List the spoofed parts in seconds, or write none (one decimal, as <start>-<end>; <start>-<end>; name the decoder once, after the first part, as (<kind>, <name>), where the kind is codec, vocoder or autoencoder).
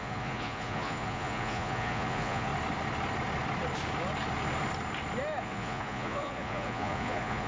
0.0-2.5 (vocoder, Vocos); 5.4-7.5